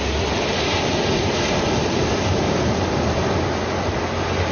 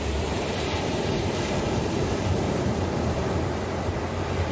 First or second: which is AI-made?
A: second